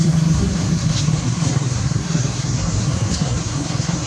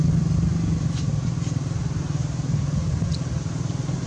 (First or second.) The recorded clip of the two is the second